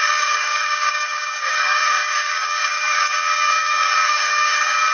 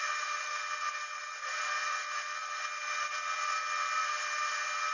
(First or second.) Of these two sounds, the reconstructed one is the first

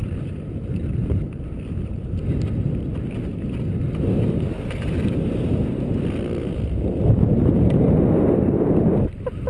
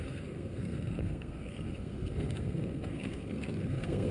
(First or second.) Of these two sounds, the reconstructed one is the second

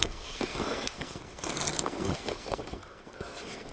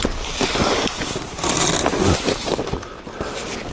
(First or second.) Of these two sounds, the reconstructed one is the first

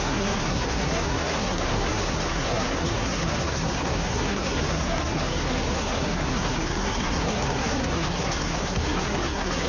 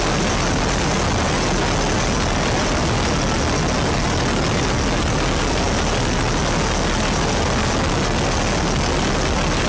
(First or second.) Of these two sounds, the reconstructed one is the first